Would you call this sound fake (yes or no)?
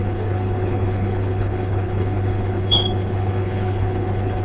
yes